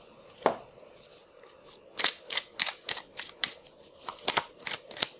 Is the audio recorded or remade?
recorded